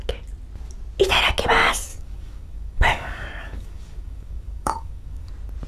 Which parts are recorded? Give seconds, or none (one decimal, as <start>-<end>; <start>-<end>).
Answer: 0.0-1.9; 5.3-5.7